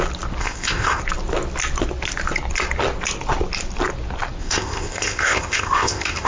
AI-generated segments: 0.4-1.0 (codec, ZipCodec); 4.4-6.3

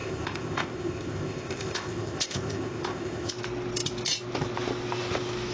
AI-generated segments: 0.0-3.3 (codec, ZipCodec)

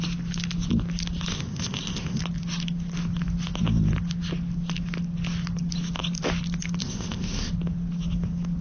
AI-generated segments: 1.3-2.2 (codec, ZipCodec); 6.8-7.5

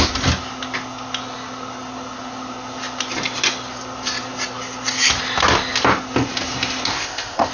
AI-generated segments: 6.9-7.5 (codec, ZipCodec)